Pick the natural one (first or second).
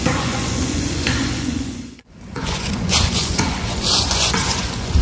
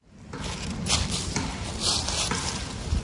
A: second